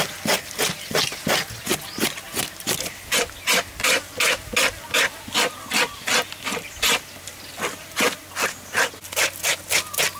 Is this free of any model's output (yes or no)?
yes